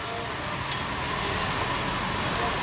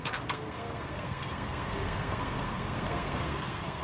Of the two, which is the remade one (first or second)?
second